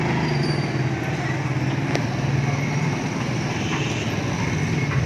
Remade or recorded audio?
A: recorded